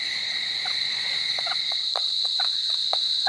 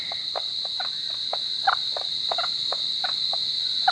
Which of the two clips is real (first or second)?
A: second